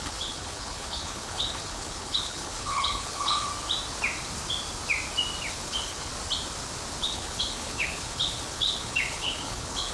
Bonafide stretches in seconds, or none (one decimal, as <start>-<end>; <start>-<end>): 3.5-5.5; 6.1-7.0